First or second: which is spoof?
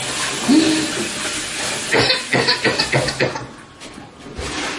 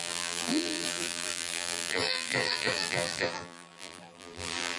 second